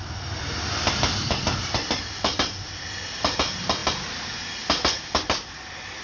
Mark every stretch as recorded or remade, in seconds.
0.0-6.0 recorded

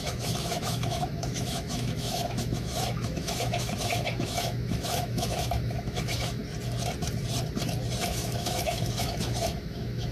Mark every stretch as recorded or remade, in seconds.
0.0-6.4 remade; 6.4-8.0 recorded; 8.0-10.1 remade